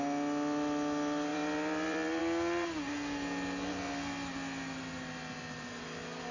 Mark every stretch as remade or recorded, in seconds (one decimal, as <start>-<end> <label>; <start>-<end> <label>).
0.0-1.3 recorded; 1.3-2.2 remade; 2.2-6.3 recorded